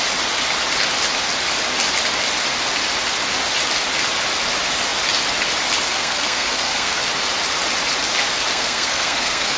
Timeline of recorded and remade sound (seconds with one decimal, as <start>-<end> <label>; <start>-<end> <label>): 0.0-5.9 recorded; 5.9-7.0 remade; 7.0-8.5 recorded; 8.5-9.6 remade